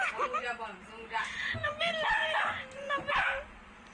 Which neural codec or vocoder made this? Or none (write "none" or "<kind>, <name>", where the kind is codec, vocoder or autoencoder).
none